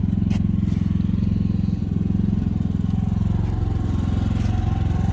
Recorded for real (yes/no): yes